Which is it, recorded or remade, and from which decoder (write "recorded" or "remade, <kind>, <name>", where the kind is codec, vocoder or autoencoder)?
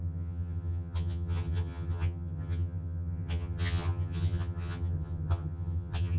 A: remade, vocoder, HiFi-GAN